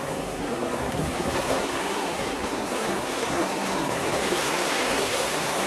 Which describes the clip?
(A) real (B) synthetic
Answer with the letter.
B